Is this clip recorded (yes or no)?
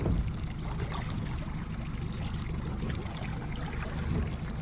yes